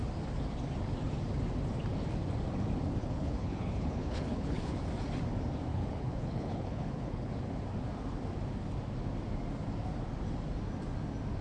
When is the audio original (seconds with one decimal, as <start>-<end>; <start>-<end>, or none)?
0.0-3.0; 4.8-5.7; 7.3-11.4